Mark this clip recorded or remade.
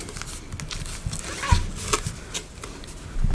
recorded